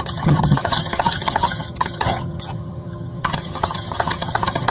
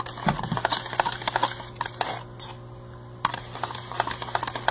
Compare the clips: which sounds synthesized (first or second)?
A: first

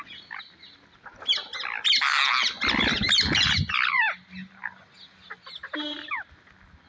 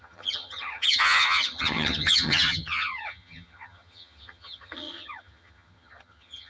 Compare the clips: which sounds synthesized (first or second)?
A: second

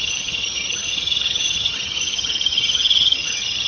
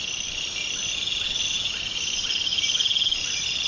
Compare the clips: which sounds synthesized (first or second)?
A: first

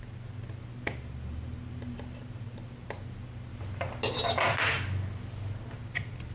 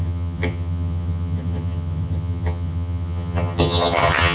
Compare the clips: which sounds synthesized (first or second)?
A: second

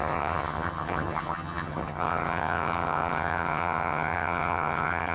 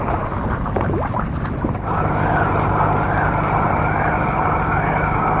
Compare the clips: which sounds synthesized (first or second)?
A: first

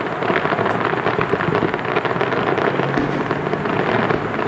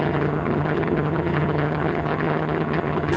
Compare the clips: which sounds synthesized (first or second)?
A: second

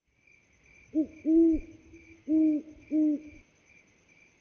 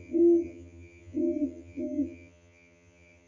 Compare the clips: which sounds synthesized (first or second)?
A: second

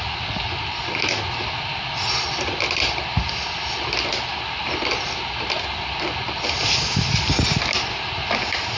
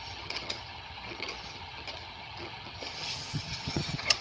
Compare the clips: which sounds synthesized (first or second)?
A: second